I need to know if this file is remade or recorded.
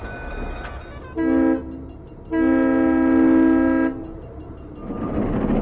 recorded